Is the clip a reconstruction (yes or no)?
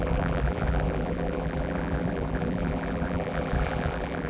yes